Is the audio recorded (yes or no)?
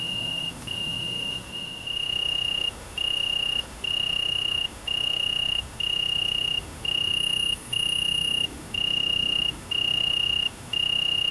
no